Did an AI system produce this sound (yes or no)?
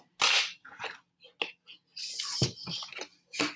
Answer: no